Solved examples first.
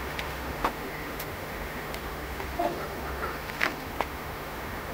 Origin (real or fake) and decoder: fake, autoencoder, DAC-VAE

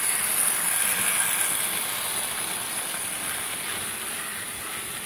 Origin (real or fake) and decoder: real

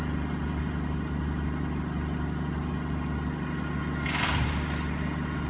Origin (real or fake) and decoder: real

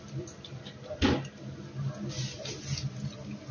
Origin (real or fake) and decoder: real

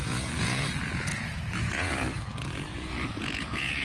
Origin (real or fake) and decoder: fake, vocoder, Vocos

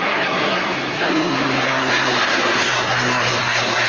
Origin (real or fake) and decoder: fake, codec, SNAC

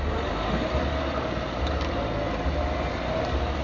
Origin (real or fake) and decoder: real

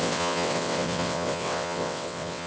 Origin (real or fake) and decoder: fake, vocoder, WaveNeXt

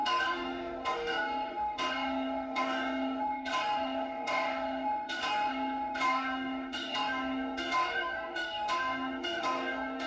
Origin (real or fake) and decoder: fake, autoencoder, DAC-VAE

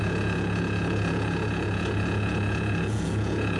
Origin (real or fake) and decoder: fake, vocoder, Vocos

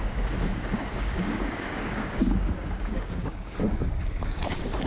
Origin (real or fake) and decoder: fake, codec, DAC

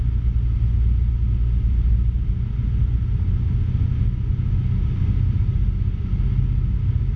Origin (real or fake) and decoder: real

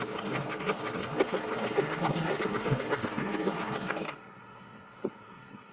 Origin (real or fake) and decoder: fake, codec, SNAC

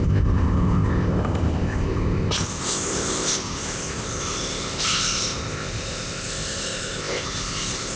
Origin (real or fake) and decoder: fake, codec, ZipCodec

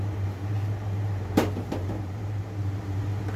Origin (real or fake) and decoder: fake, vocoder, BigVGAN v2